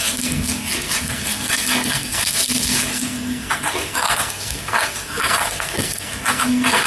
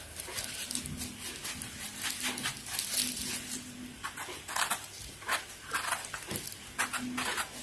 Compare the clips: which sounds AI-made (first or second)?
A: first